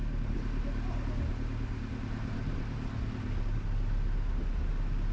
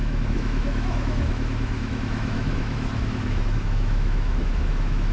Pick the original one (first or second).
first